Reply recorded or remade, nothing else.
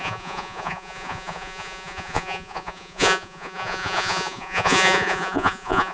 remade